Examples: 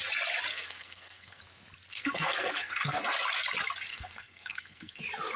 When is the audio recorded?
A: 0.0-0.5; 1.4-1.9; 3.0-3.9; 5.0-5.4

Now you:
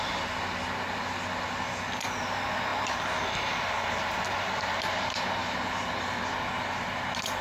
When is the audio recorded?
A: 0.0-7.4

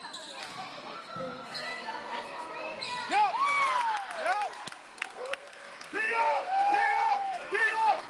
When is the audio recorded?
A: 0.0-0.7; 2.5-4.8